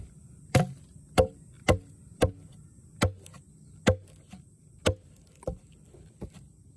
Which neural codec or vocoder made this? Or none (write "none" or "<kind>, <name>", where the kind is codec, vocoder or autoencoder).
none